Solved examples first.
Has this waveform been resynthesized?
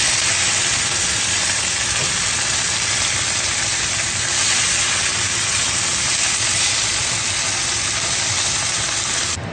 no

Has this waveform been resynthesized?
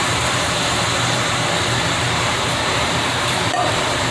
yes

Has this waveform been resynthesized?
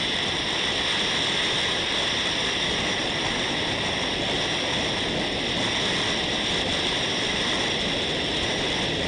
no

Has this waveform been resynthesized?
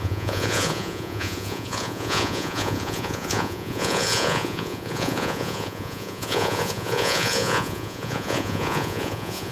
yes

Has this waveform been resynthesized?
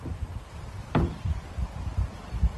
yes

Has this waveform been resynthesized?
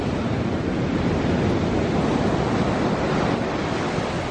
no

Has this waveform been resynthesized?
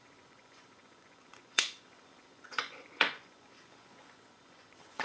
yes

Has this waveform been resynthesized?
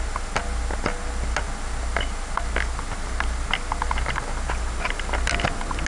no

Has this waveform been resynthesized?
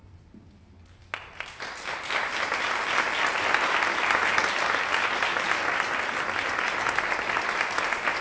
no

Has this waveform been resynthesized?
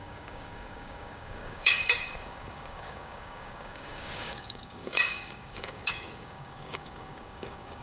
yes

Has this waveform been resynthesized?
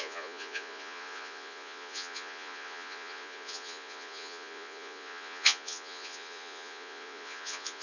yes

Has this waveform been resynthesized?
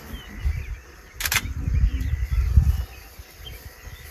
no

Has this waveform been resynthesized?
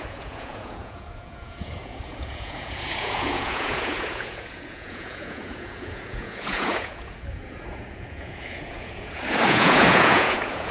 yes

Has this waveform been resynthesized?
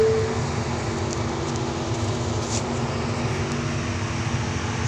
no